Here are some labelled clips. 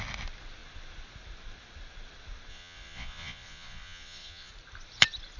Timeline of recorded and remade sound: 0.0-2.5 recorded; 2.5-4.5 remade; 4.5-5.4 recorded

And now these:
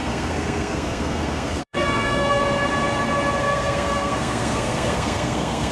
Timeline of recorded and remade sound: 0.0-2.4 remade; 2.4-3.4 recorded; 3.4-5.7 remade

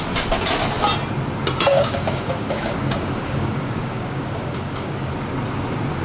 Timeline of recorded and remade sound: 0.0-1.7 recorded; 1.7-5.1 remade; 5.1-6.0 recorded

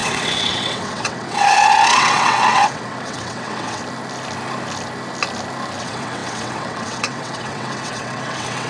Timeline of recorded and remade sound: 0.0-3.8 remade; 3.8-5.8 recorded; 5.8-8.7 remade

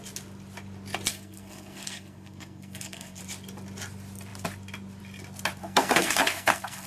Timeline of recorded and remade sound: 0.0-1.1 recorded; 1.1-3.2 remade; 3.2-5.6 recorded; 5.6-6.9 remade